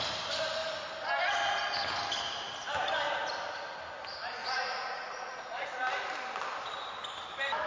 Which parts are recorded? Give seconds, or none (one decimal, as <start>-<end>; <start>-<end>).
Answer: 0.0-4.4; 5.7-7.7